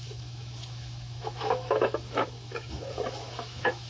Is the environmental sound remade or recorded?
remade